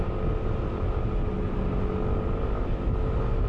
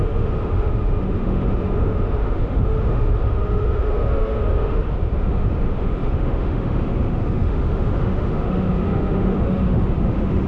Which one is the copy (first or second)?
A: second